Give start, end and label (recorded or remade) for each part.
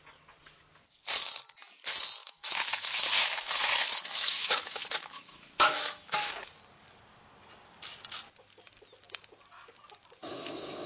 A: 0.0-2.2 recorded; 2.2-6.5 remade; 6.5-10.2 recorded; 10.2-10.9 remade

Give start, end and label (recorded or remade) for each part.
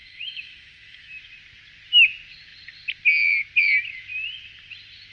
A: 0.0-1.2 remade; 1.2-5.1 recorded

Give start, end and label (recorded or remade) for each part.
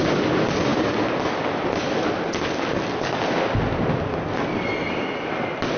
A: 0.0-5.8 recorded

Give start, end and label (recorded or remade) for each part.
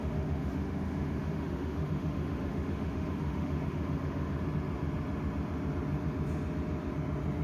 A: 0.0-4.4 remade; 4.4-7.4 recorded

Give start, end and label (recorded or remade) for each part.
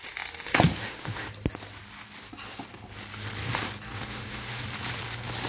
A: 0.0-0.8 recorded; 0.8-1.3 remade; 1.3-3.9 recorded; 3.9-4.6 remade; 4.6-5.5 recorded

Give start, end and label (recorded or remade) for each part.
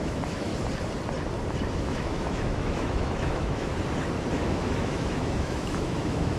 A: 0.0-0.5 remade; 0.5-1.7 recorded; 1.7-3.7 remade; 3.7-4.3 recorded; 4.3-6.4 remade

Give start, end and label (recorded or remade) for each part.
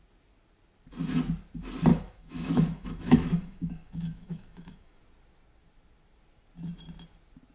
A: 0.0-1.9 recorded; 1.9-5.0 remade; 5.0-7.5 recorded